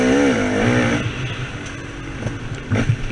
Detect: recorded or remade recorded